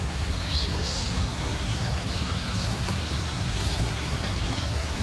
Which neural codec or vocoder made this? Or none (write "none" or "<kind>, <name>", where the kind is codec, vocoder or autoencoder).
codec, SNAC